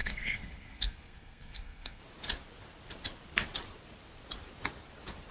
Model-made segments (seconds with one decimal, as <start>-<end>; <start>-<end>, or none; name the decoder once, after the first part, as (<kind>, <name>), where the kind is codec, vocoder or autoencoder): 0.0-2.0 (codec, SNAC)